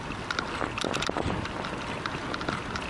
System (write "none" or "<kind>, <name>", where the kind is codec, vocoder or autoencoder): none